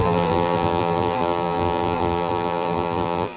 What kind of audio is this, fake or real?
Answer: fake